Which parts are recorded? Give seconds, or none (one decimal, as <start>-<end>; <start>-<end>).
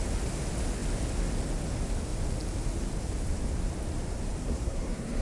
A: 0.0-4.4